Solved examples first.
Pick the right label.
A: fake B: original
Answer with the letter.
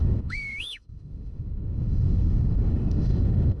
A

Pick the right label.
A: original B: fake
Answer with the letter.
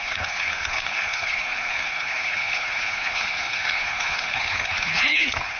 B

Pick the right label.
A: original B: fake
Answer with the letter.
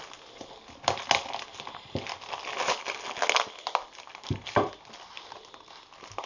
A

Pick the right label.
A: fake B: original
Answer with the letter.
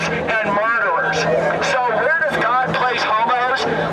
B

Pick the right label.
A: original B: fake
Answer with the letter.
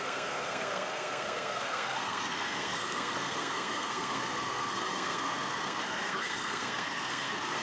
B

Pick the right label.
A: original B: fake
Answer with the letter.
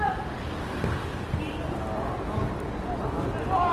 B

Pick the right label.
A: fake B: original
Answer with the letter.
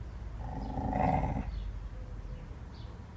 B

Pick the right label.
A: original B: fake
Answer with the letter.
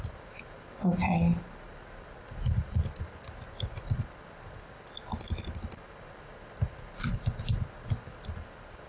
A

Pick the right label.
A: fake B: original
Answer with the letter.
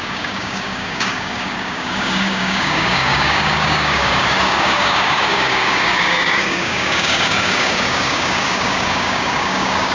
A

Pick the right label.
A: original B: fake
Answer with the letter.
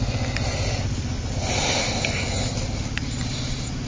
A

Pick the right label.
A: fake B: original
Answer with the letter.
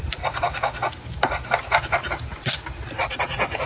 B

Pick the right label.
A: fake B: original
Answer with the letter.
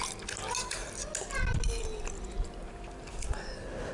B